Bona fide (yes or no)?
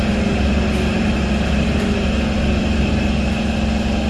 yes